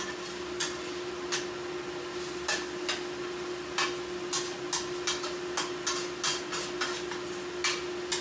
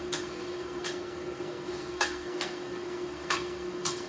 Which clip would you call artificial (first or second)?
second